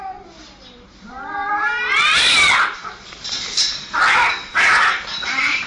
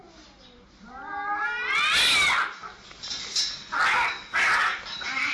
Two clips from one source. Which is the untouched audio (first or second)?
second